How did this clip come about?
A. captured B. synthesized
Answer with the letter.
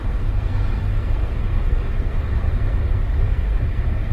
B